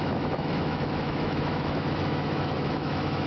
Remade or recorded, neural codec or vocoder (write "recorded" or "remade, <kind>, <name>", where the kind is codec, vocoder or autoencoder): remade, autoencoder, DAC-VAE